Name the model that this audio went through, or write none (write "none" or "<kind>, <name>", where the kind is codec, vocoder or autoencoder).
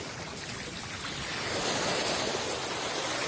none